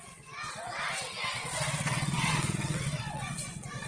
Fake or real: fake